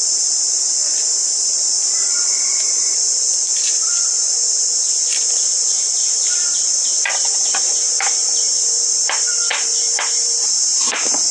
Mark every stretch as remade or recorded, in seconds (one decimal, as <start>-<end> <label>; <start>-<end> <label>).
0.0-9.5 recorded; 9.5-11.3 remade